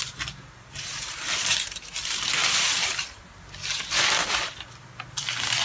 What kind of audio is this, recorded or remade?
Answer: recorded